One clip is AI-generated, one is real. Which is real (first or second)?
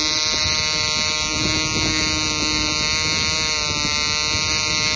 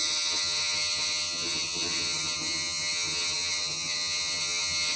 first